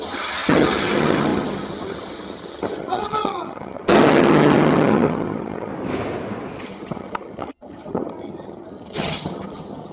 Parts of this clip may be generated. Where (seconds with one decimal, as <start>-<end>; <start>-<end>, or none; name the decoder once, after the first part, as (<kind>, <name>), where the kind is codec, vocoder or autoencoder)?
0.0-5.7 (vocoder, HiFi-GAN); 6.6-9.9